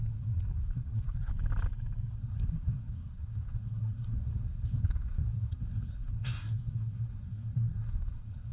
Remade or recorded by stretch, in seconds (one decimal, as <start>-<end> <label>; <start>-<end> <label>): 0.0-1.3 remade; 1.3-2.1 recorded; 2.1-8.5 remade